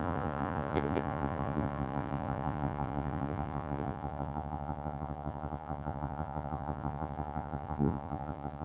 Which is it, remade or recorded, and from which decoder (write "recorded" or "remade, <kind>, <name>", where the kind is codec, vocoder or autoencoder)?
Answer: remade, vocoder, Vocos